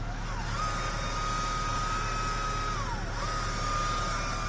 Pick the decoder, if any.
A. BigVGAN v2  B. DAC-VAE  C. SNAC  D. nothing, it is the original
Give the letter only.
D